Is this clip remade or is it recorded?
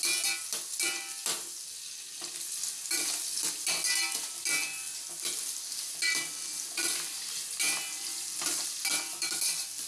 recorded